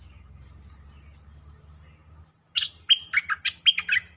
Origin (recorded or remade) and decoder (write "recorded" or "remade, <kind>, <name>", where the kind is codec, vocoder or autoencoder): recorded